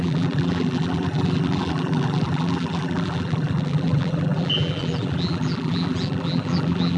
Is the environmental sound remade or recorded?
remade